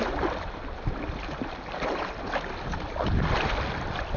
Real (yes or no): yes